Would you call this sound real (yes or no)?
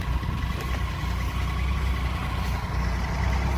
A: yes